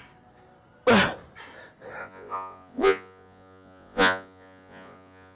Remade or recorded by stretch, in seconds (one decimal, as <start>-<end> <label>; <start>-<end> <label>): 0.0-2.0 recorded; 2.0-5.4 remade

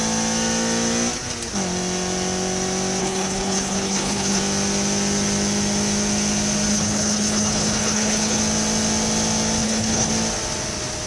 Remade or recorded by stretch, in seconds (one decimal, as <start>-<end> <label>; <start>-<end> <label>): 0.0-3.0 recorded; 3.0-4.4 remade; 4.4-6.7 recorded; 6.7-8.4 remade; 8.4-9.6 recorded; 9.6-10.1 remade; 10.1-11.1 recorded

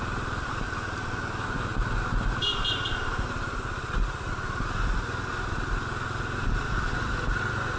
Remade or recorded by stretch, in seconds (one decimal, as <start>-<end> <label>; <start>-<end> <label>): 0.0-7.8 recorded